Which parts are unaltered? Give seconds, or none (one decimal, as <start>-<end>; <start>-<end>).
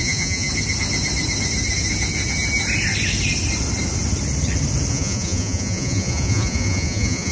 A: 0.5-4.9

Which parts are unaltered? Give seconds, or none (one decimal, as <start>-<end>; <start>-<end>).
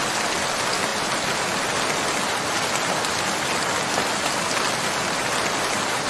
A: 0.0-6.1